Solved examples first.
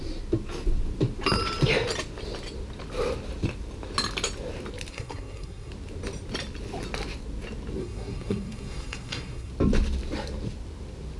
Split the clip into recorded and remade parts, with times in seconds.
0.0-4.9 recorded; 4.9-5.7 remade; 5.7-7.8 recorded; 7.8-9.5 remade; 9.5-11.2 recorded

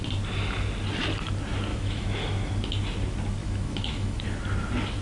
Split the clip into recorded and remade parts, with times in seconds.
0.0-1.7 recorded; 1.7-2.5 remade; 2.5-3.4 recorded; 3.4-4.2 remade; 4.2-5.0 recorded

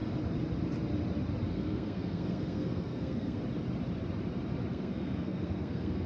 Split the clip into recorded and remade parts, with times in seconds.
0.0-1.5 recorded; 1.5-3.4 remade; 3.4-4.7 recorded; 4.7-6.1 remade

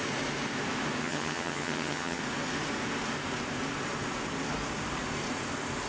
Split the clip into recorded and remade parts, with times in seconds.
0.0-1.0 recorded; 1.0-2.2 remade; 2.2-5.9 recorded

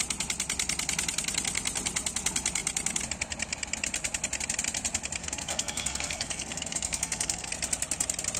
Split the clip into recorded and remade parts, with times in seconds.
0.0-5.2 recorded; 5.2-7.5 remade; 7.5-8.4 recorded

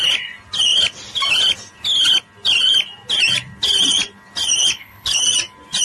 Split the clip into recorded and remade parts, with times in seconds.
0.0-4.6 recorded; 4.6-5.2 remade; 5.2-5.8 recorded

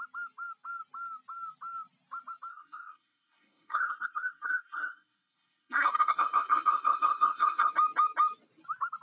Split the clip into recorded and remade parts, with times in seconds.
0.0-2.5 recorded; 2.5-7.7 remade; 7.7-9.0 recorded

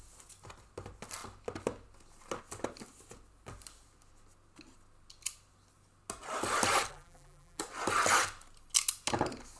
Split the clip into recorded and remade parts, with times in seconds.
0.0-6.9 recorded; 6.9-7.6 remade; 7.6-9.6 recorded